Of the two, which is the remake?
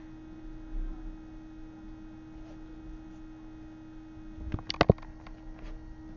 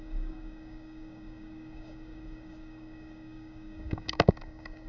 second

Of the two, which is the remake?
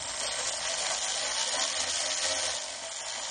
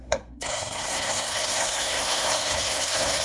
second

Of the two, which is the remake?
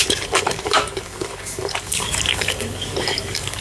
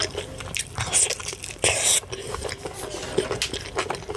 first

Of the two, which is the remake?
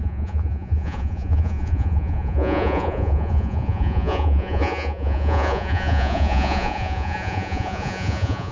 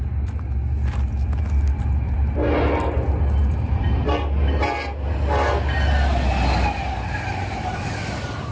first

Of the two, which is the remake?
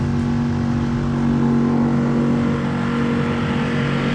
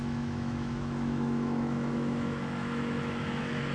second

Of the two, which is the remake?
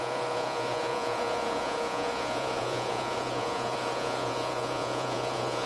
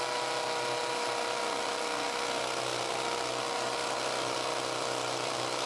first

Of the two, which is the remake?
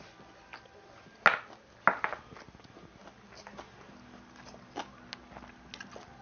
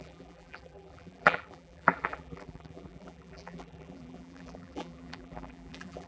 second